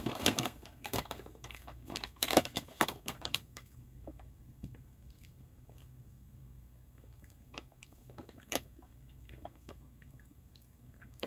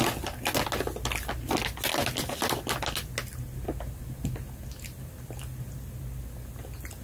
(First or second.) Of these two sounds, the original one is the second